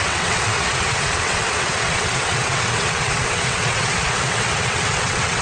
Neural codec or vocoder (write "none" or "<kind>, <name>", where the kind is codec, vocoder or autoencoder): vocoder, WaveNeXt